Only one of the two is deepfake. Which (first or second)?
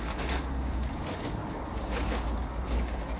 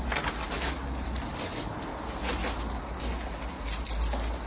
first